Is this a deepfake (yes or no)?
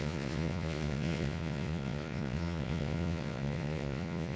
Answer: yes